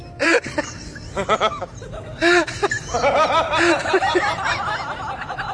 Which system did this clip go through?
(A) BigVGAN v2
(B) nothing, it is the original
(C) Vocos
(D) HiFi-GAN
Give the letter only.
A